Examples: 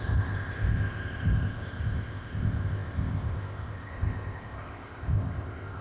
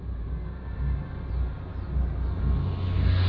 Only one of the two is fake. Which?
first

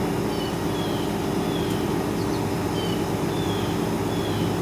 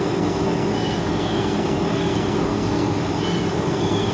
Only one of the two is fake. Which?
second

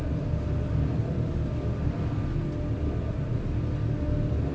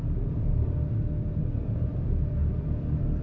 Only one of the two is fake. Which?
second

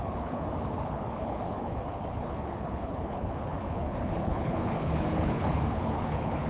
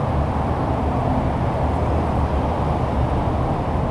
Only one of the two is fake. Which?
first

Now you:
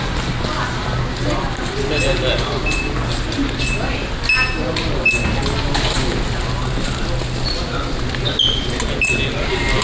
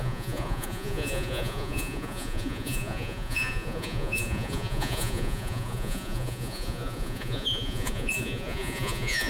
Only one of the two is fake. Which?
second